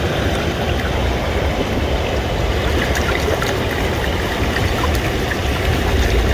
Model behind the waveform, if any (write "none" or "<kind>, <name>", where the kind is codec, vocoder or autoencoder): none